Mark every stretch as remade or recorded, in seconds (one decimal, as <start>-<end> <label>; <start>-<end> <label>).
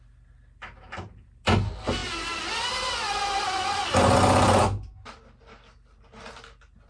0.0-6.9 recorded